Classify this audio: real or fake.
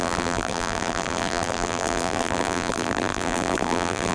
fake